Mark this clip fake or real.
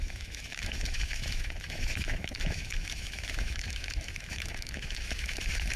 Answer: fake